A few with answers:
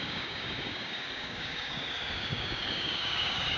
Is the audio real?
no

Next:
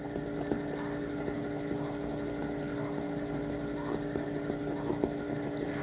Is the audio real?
yes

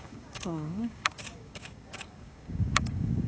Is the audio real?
no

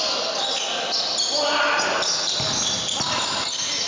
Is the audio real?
yes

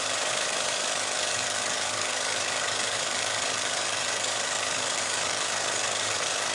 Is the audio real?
no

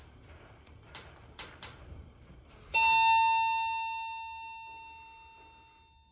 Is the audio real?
yes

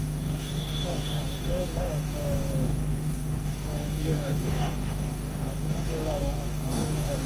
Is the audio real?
no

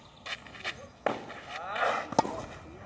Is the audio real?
yes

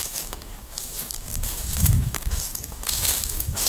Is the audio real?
no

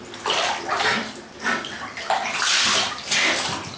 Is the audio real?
yes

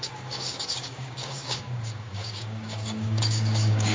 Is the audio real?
no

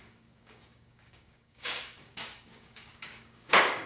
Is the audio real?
no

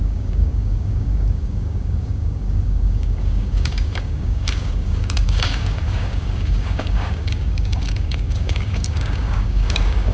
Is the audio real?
no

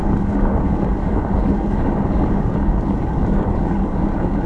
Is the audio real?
no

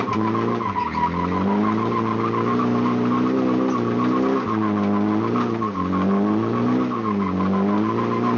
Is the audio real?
yes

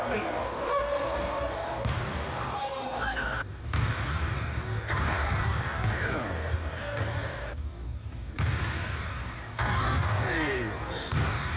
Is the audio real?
no